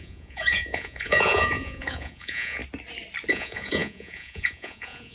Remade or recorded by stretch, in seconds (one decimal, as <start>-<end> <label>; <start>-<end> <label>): 0.0-2.6 remade; 2.6-3.3 recorded; 3.3-5.1 remade

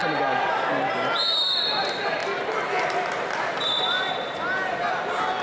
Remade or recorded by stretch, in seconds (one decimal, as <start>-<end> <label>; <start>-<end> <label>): 0.0-5.4 recorded

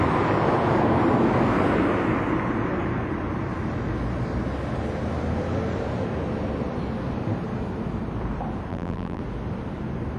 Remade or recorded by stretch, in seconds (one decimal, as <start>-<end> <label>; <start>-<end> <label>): 0.0-8.7 recorded; 8.7-9.2 remade; 9.2-10.2 recorded

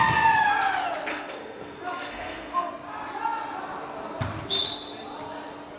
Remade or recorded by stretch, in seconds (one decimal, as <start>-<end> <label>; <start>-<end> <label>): 0.0-1.1 recorded; 1.1-2.7 remade; 2.7-5.8 recorded